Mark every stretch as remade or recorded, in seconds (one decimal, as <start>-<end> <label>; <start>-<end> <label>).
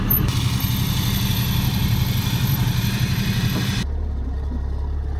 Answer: 0.0-0.6 recorded; 0.6-3.7 remade; 3.7-5.2 recorded